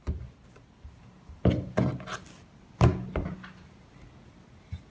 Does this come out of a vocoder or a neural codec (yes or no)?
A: no